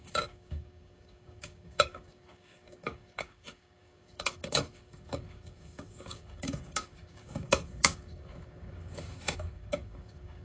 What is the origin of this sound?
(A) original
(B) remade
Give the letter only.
B